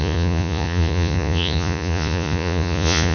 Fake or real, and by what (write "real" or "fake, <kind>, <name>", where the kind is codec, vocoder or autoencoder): fake, vocoder, Vocos